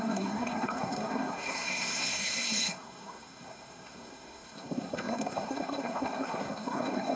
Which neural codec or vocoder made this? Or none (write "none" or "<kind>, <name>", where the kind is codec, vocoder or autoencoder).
codec, SNAC